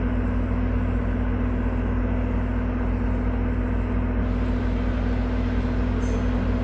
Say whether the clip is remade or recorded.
recorded